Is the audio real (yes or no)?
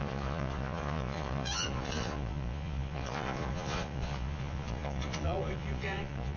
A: no